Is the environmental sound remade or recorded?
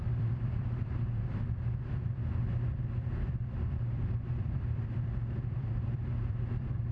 remade